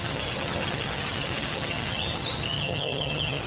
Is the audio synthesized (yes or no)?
yes